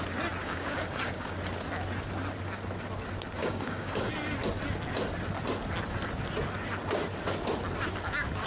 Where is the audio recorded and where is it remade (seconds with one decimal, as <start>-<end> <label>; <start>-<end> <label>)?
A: 0.0-0.4 recorded; 0.4-1.3 remade; 1.3-3.4 recorded; 3.4-4.1 remade; 4.1-8.5 recorded